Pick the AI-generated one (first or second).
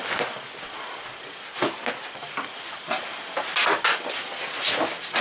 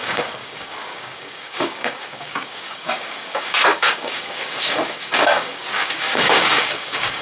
second